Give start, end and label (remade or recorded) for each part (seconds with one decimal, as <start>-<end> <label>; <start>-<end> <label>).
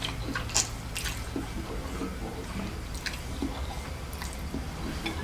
0.0-5.2 recorded